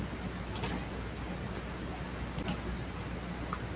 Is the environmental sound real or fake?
real